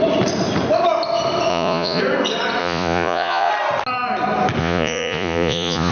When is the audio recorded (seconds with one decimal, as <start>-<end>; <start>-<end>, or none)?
0.0-1.5; 2.0-2.6; 3.5-4.6